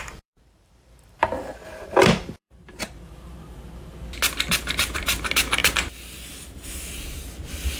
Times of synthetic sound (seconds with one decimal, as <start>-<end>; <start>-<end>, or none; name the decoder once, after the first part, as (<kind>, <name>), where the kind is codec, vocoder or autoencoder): 0.0-3.9 (vocoder, BigVGAN v2); 4.5-7.8